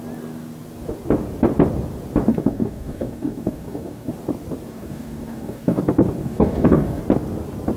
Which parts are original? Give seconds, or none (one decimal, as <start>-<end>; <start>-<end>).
0.0-2.3; 4.1-4.7; 5.8-6.2; 7.0-7.8

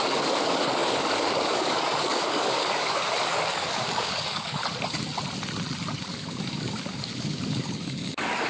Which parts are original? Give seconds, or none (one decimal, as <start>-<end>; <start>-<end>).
4.6-6.0